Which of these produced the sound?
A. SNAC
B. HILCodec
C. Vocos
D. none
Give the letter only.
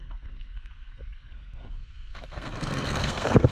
A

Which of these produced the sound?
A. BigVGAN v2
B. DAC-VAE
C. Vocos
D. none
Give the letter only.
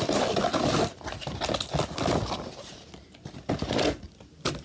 D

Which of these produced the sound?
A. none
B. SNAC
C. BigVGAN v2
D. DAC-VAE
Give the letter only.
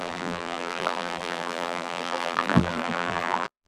C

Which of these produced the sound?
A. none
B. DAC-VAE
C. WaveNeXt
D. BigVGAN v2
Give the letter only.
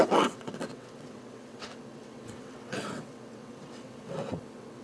C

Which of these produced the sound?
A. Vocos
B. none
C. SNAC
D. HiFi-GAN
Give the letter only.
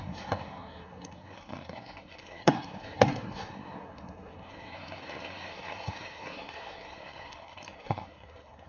C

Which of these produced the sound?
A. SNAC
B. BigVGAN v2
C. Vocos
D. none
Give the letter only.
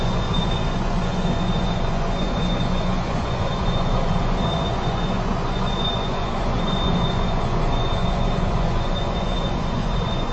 C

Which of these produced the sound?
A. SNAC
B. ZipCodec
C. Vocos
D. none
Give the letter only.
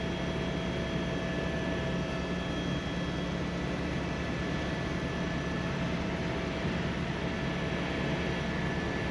D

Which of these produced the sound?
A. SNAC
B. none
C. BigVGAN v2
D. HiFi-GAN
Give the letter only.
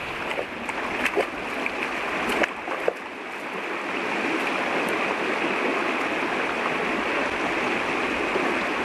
B